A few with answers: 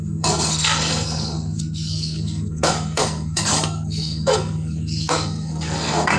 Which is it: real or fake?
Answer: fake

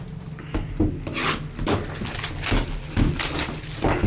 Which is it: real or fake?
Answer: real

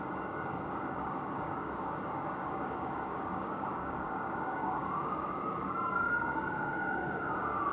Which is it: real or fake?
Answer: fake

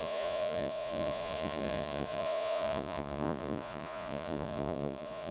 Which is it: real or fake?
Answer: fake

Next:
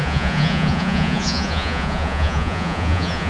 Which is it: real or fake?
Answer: fake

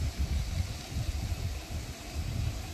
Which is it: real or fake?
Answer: real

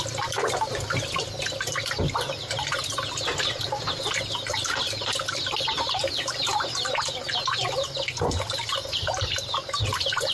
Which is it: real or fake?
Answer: real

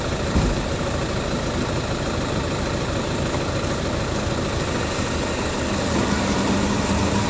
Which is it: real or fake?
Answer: real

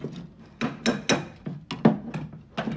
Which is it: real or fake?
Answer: real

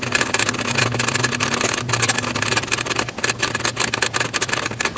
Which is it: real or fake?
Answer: real